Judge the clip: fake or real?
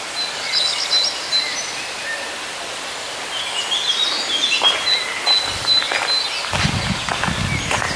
real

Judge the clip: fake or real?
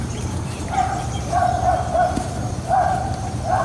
fake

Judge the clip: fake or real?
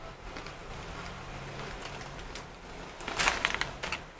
real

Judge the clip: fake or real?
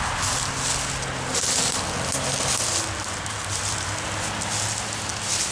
real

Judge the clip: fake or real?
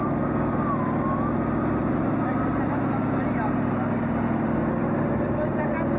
real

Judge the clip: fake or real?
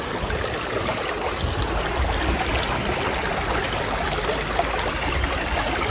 real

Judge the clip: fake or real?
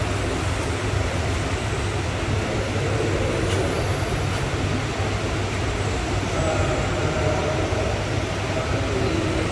real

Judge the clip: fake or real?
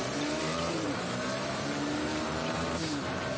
fake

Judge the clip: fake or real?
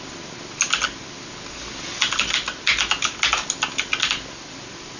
real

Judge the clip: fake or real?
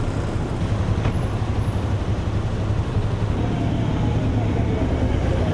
real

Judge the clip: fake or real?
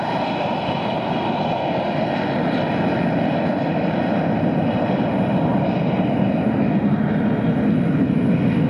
real